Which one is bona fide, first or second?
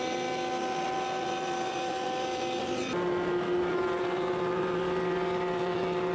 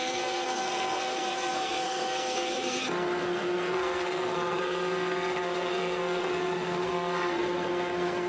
first